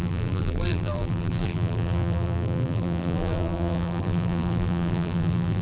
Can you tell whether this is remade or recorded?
remade